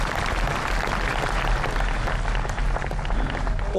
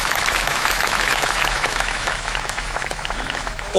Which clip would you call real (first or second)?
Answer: first